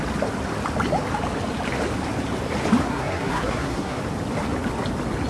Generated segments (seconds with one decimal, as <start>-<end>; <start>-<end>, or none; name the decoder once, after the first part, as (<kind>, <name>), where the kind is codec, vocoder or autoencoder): 2.8-4.0 (codec, SNAC)